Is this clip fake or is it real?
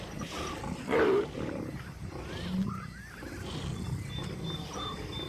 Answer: real